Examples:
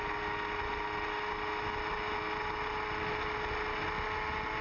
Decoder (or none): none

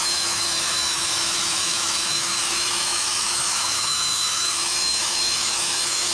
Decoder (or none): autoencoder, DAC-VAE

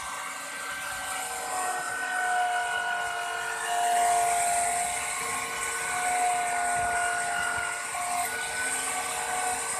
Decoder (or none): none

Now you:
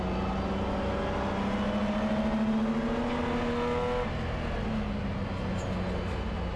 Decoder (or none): none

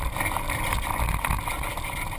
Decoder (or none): none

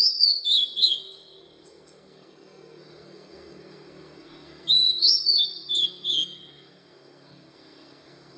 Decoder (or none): codec, SNAC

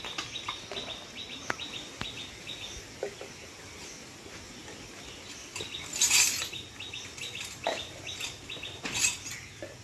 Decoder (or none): none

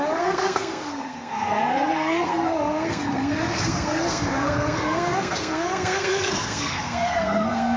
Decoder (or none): codec, SNAC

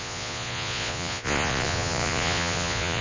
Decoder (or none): vocoder, Vocos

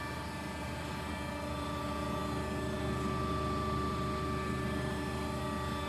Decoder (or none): none